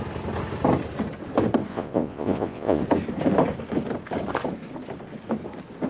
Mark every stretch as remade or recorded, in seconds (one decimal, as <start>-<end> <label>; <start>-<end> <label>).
0.0-1.7 recorded; 1.7-2.8 remade; 2.8-5.9 recorded